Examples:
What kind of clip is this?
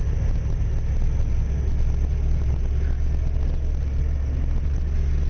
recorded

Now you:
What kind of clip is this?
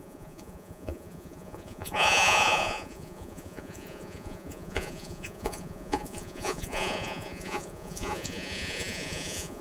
remade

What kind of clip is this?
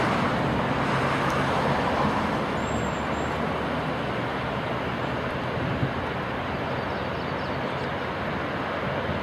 recorded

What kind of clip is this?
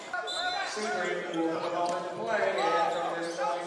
recorded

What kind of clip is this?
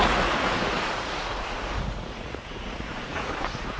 remade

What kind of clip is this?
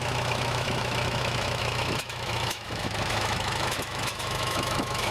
remade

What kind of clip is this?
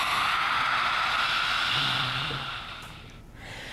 recorded